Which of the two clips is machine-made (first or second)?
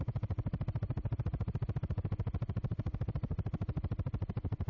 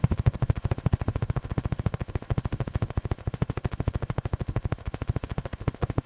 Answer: second